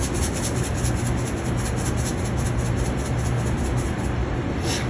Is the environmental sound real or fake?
real